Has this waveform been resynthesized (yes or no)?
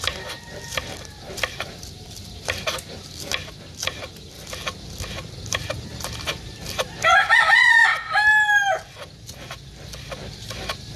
no